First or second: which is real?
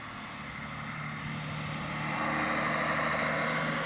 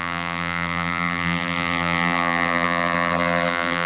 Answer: first